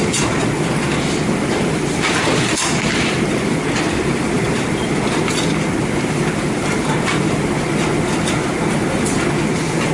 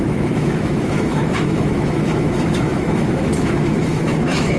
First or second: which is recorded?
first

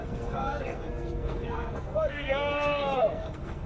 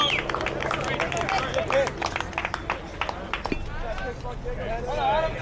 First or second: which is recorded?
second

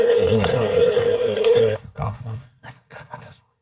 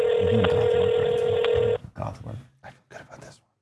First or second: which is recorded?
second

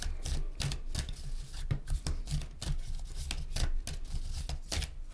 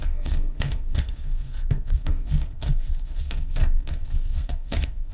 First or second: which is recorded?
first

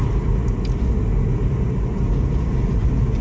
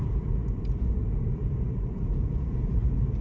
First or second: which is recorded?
first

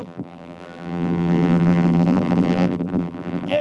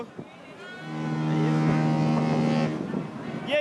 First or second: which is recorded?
second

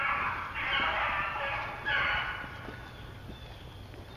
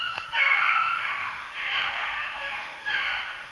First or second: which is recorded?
first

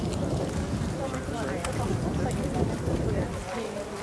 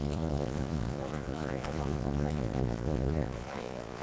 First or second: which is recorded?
first